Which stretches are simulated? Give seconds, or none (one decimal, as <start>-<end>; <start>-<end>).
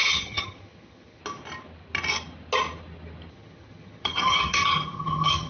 0.0-1.2; 3.3-5.5